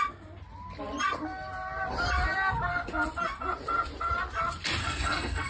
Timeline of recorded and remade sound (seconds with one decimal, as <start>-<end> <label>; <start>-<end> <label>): 0.0-4.8 recorded; 4.8-5.5 remade